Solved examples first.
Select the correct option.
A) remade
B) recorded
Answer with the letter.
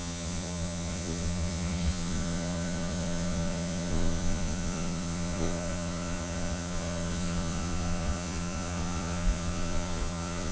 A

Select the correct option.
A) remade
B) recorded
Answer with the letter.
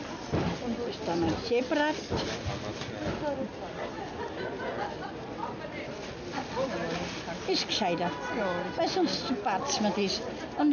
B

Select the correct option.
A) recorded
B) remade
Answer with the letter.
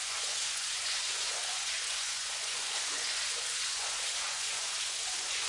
B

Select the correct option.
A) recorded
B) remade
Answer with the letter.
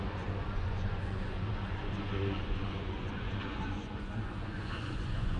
B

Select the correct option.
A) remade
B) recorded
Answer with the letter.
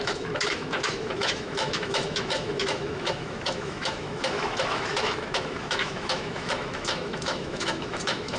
A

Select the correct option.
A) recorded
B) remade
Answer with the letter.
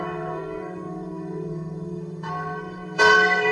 B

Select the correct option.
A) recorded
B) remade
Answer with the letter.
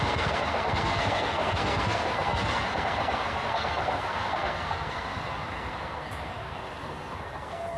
B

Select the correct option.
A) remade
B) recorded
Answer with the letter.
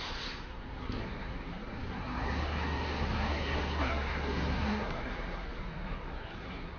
A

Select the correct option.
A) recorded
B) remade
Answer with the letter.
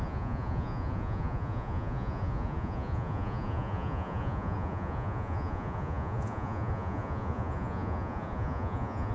B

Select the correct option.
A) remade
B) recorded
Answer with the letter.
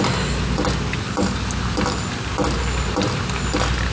B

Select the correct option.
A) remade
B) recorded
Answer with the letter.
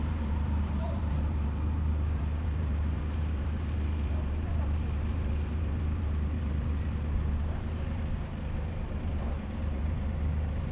A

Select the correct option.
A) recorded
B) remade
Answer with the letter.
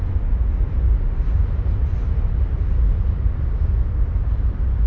A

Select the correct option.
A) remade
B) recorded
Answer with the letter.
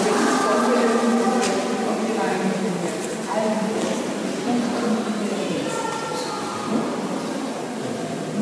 B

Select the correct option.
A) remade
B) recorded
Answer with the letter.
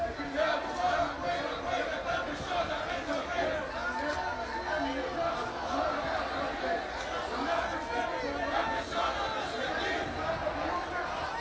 B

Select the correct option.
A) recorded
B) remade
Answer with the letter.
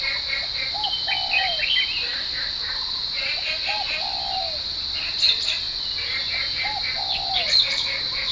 A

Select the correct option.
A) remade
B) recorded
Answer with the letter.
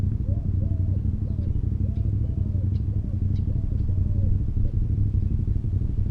A